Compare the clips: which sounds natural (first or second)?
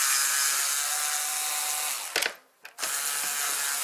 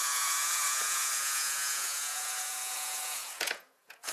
first